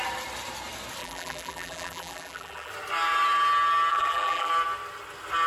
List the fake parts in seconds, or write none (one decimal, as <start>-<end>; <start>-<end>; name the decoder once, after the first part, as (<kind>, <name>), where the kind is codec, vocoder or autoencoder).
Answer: 1.0-2.7 (vocoder, BigVGAN v2); 3.9-4.5